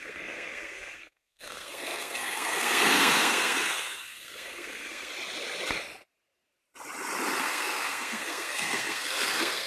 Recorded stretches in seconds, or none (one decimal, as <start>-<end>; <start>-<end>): 5.1-7.4